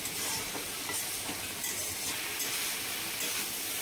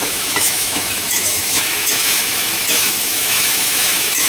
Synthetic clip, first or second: second